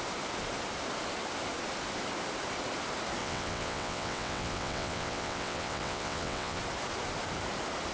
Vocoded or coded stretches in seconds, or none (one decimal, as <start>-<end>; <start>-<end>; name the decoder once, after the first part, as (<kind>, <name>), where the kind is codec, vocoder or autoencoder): 3.2-6.6 (vocoder, WaveNeXt)